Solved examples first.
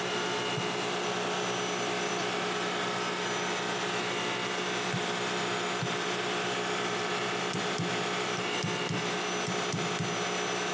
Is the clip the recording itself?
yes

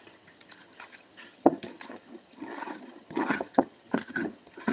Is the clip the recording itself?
no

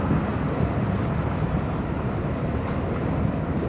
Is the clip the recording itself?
yes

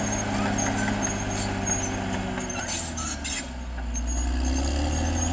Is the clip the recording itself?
yes